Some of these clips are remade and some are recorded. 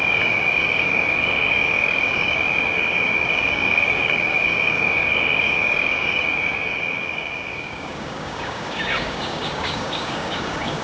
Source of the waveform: remade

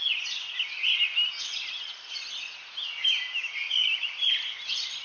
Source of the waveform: recorded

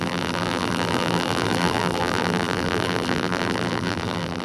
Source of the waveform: remade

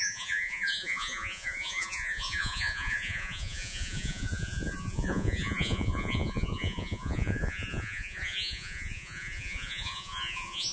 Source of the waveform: remade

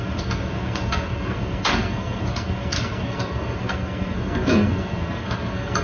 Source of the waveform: remade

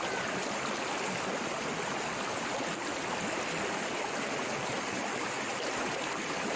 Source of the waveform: recorded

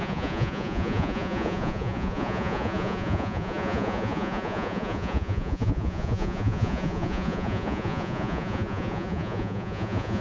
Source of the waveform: remade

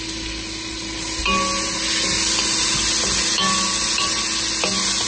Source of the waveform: recorded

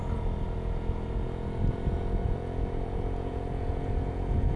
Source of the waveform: remade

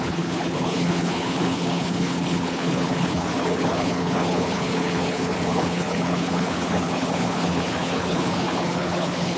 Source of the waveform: remade